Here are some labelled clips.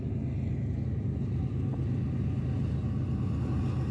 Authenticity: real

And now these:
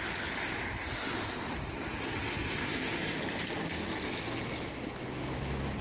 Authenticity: real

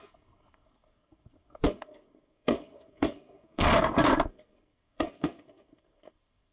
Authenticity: fake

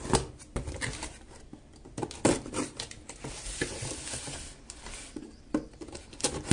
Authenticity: real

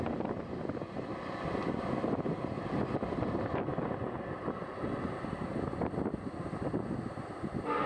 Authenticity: real